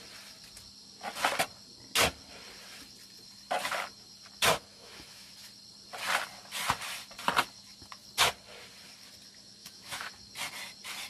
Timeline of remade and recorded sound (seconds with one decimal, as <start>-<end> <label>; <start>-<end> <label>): 0.0-4.7 recorded; 4.7-5.3 remade; 5.3-9.6 recorded; 9.6-10.1 remade; 10.1-11.1 recorded